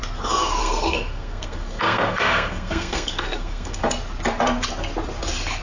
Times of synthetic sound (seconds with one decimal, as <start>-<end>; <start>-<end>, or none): 0.6-3.8